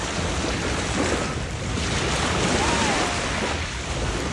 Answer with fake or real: real